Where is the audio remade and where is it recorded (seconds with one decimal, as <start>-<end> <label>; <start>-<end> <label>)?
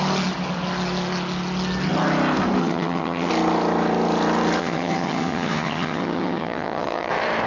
0.0-2.6 recorded; 2.6-3.3 remade; 3.3-4.6 recorded; 4.6-7.1 remade; 7.1-7.5 recorded